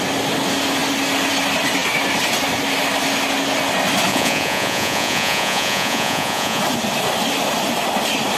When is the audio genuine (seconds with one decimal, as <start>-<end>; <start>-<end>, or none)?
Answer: 0.0-4.1; 6.6-8.4